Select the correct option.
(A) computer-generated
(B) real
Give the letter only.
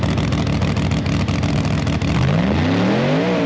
B